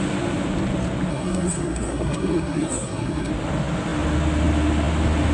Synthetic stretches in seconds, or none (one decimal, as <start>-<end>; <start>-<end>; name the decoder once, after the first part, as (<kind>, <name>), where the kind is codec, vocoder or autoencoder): 1.1-3.3 (codec, SNAC)